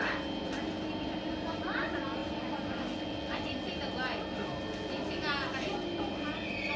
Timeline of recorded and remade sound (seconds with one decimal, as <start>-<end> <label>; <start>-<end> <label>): 0.0-6.8 recorded